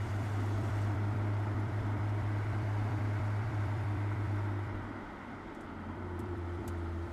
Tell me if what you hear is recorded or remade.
remade